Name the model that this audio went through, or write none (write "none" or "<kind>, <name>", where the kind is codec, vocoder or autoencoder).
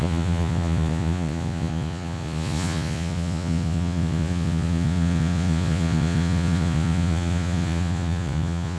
vocoder, Vocos